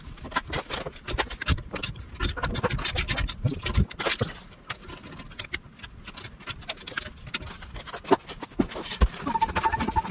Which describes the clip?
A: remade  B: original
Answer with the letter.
B